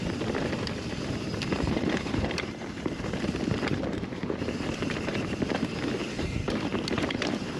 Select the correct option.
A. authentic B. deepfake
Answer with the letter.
B